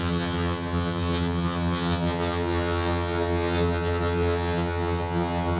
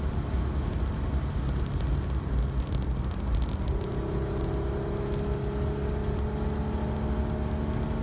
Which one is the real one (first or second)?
second